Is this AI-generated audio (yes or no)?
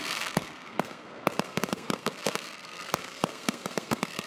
yes